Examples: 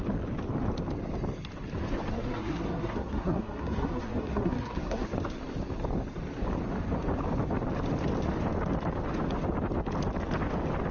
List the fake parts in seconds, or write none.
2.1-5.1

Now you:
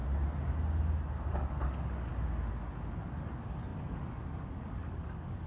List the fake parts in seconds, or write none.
1.3-2.1; 3.0-5.5

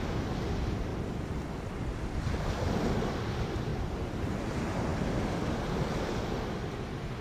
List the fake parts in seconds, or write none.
3.7-4.4